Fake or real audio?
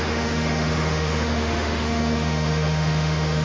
fake